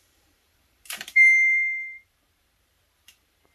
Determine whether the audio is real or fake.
fake